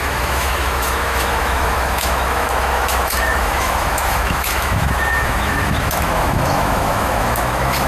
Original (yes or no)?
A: no